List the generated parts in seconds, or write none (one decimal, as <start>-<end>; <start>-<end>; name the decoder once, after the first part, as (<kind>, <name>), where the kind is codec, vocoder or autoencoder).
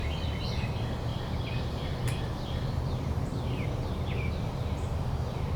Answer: 0.0-0.5 (vocoder, BigVGAN v2); 1.1-4.5